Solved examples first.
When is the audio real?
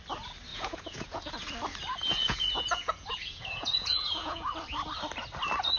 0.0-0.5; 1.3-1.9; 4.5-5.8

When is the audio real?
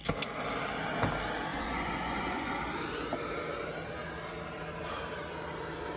0.0-1.5; 2.5-6.0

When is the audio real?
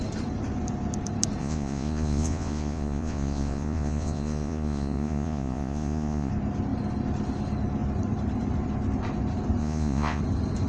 0.0-1.4; 6.3-9.6; 10.2-10.7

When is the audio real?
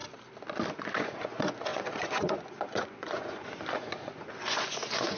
0.0-0.7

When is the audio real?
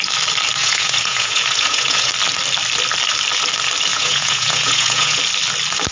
0.0-0.6; 2.1-3.9; 5.2-5.9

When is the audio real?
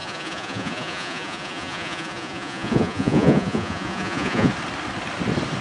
4.5-5.6